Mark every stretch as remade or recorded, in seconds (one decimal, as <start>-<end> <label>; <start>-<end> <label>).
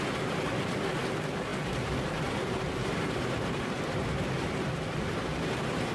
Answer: 0.0-5.9 recorded